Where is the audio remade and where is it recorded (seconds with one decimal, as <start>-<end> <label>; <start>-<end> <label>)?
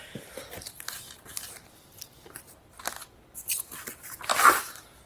0.0-1.3 recorded; 1.3-2.7 remade; 2.7-3.7 recorded; 3.7-4.6 remade; 4.6-5.1 recorded